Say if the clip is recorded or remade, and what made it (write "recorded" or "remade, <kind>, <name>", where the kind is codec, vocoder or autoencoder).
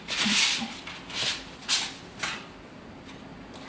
recorded